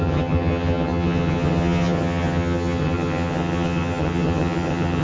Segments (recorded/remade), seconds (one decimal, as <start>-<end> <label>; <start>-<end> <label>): 0.0-5.0 remade